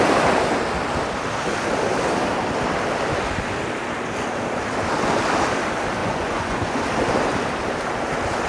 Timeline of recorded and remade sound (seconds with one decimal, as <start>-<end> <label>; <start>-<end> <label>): 0.0-6.0 recorded; 6.0-6.8 remade; 6.8-8.5 recorded

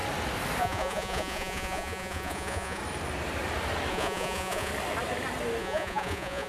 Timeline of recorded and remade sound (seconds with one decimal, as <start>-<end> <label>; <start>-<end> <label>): 0.0-0.6 recorded; 0.6-2.8 remade; 2.8-3.9 recorded; 3.9-4.7 remade; 4.7-5.6 recorded; 5.6-6.5 remade

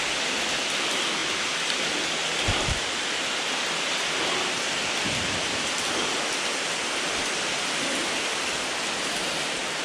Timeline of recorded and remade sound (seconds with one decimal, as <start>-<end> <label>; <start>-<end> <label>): 0.0-9.8 recorded

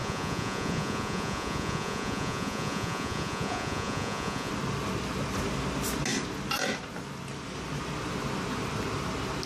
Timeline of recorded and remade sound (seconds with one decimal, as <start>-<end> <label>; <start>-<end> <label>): 0.0-4.5 remade; 4.5-9.5 recorded